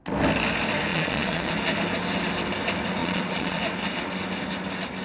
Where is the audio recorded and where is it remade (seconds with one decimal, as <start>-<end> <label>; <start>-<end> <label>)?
0.0-0.9 recorded; 0.9-1.5 remade; 1.5-3.0 recorded; 3.0-3.6 remade; 3.6-5.0 recorded